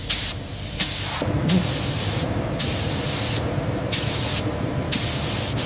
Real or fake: fake